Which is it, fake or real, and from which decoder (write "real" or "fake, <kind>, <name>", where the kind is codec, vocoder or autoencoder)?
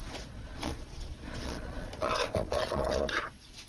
fake, vocoder, Vocos